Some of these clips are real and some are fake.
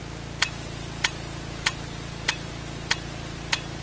real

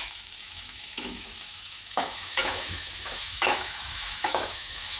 fake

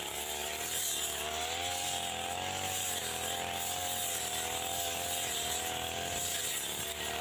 real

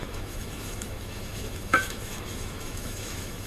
fake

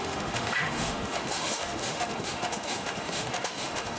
fake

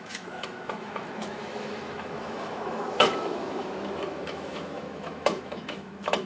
fake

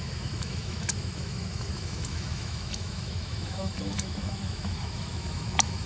fake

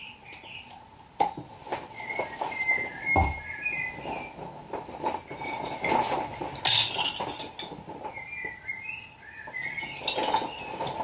real